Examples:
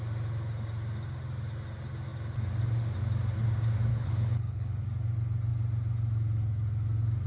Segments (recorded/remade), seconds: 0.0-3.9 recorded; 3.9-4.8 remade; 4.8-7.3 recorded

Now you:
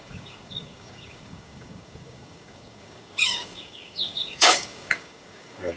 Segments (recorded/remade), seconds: 0.0-5.8 remade

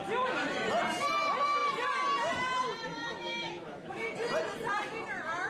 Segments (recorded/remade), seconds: 0.0-3.0 recorded; 3.0-4.0 remade; 4.0-5.5 recorded

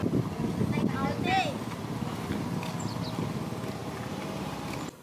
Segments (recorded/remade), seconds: 0.0-5.0 recorded

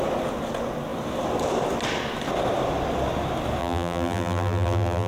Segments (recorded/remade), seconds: 0.0-3.6 recorded; 3.6-5.1 remade

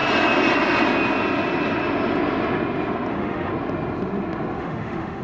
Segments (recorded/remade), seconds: 0.0-3.1 recorded; 3.1-3.5 remade; 3.5-4.6 recorded; 4.6-5.2 remade